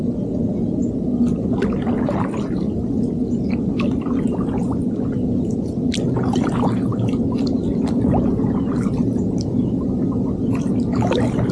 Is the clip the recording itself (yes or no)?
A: yes